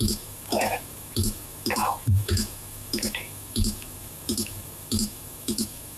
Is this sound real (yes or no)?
no